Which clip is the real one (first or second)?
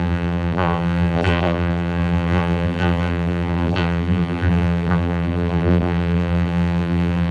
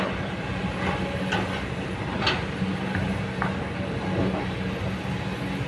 second